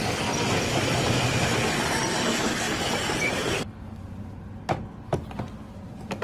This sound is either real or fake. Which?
real